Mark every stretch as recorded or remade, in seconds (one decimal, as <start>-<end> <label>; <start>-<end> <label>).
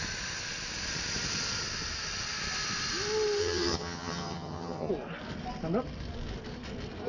0.0-3.4 recorded; 3.4-4.9 remade; 4.9-7.1 recorded